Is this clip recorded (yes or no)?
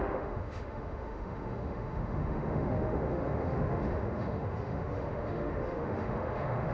no